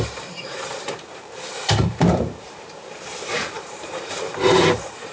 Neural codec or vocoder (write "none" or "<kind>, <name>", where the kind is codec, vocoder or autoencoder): vocoder, BigVGAN v2